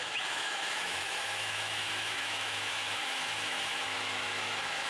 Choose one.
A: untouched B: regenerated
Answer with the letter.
B